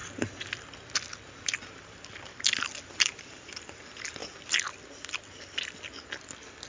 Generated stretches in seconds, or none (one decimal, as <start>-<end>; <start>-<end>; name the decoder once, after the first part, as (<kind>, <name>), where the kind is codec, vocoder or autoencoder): none